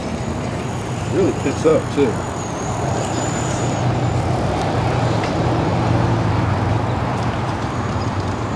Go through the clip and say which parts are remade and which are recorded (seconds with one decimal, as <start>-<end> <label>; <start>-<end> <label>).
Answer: 0.0-1.7 remade; 1.7-2.6 recorded; 2.6-8.6 remade